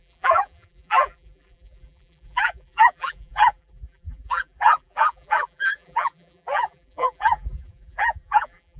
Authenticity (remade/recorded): remade